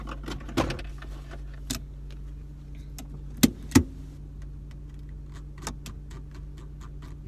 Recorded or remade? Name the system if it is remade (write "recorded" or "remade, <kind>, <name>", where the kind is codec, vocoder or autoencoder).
recorded